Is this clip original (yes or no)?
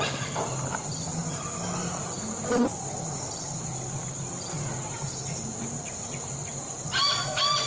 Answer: yes